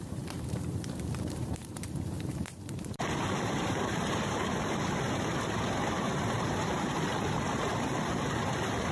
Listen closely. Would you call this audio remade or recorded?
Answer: remade